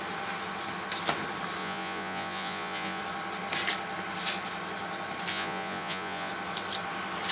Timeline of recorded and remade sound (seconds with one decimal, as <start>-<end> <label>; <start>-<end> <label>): 0.0-1.6 recorded; 1.6-3.0 remade; 3.0-5.3 recorded; 5.3-6.3 remade; 6.3-7.3 recorded